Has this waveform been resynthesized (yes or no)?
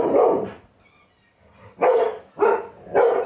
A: no